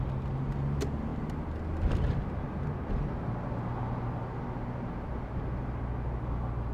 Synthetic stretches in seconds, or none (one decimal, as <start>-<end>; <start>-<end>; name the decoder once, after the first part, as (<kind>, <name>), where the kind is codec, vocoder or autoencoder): none